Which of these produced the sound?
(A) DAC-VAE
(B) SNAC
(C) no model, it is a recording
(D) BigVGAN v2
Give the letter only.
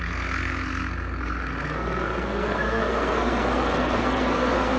B